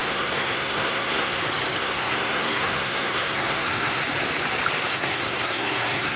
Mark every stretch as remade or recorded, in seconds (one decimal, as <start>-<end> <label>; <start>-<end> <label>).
0.0-1.4 remade; 1.4-1.8 recorded; 1.8-4.0 remade; 4.0-4.9 recorded; 4.9-6.2 remade